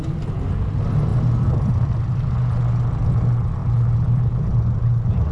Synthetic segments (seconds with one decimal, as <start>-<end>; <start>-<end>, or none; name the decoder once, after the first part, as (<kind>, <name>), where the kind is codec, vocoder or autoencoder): 1.1-1.7 (vocoder, BigVGAN v2); 3.6-5.3